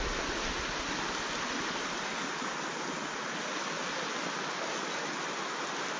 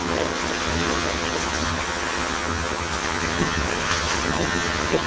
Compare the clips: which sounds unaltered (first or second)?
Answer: first